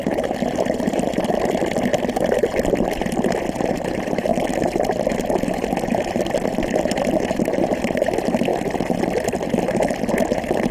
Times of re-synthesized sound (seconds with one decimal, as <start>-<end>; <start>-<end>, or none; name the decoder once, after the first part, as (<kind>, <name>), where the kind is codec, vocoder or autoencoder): none